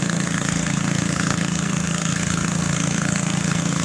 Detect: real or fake fake